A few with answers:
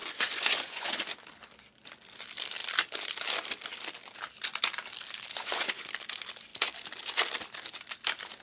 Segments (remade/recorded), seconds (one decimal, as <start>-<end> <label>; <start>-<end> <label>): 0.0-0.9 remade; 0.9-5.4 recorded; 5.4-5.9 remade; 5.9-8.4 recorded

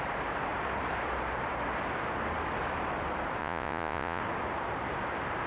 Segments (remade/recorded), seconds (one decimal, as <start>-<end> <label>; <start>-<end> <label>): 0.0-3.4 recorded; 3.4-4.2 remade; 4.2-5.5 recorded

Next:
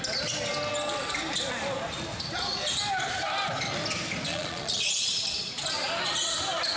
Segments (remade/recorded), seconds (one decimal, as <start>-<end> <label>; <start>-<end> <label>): 0.0-4.3 recorded; 4.3-5.1 remade; 5.1-6.8 recorded